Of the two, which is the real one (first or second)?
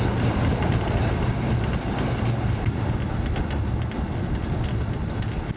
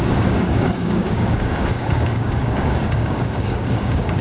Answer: first